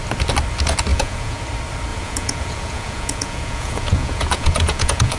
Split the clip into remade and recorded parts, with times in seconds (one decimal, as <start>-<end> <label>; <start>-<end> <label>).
0.0-0.9 recorded; 0.9-1.4 remade; 1.4-1.9 recorded; 1.9-5.2 remade